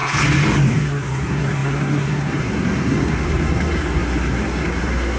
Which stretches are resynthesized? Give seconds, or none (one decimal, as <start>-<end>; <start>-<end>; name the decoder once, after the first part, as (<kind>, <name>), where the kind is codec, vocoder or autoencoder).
0.7-5.2 (codec, SNAC)